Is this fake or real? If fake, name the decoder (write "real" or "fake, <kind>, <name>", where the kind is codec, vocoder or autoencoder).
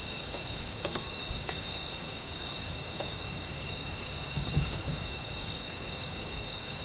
fake, codec, DAC